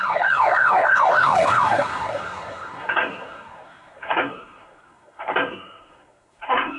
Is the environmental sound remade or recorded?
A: remade